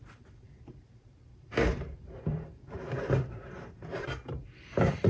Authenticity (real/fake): fake